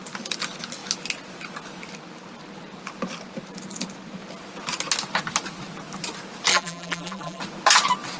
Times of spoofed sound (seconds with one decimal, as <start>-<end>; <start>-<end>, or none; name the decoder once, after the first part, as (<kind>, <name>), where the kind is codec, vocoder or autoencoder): 6.5-7.4 (vocoder, BigVGAN v2)